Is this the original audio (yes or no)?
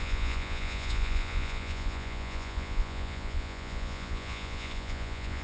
no